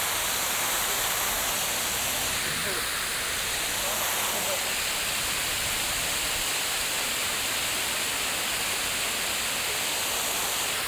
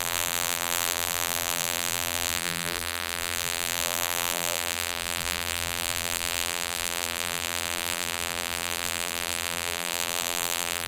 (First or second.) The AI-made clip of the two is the second